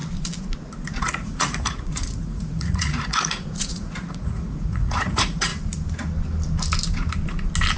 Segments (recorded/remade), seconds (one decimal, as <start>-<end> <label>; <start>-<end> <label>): 0.0-1.0 recorded; 1.0-5.5 remade; 5.5-7.8 recorded